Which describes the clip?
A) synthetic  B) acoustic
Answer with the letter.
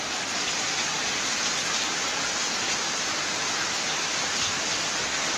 B